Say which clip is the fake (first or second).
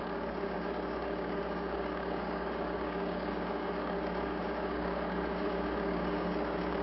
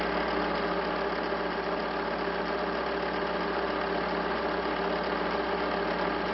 first